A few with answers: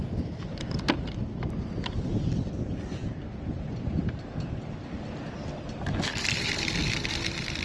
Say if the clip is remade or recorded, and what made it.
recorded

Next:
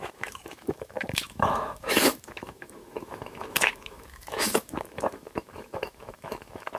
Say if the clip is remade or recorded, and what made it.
remade, autoencoder, DAC-VAE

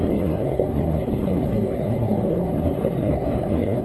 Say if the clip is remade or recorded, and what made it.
remade, codec, SNAC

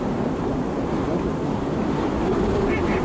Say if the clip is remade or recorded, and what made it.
recorded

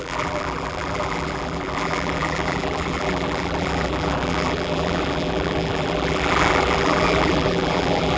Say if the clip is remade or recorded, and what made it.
remade, vocoder, BigVGAN v2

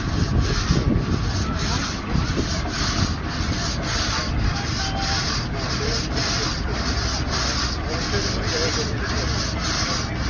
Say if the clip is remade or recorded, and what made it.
recorded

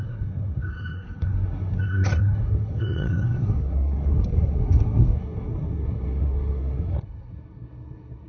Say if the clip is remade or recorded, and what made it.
remade, codec, SNAC